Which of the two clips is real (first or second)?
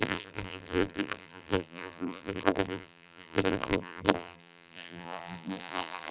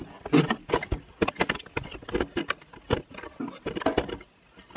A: second